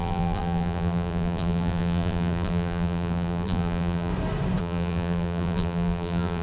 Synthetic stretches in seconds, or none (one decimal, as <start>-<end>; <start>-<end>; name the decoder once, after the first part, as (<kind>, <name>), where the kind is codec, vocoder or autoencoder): 0.0-4.1 (vocoder, BigVGAN v2); 4.6-6.4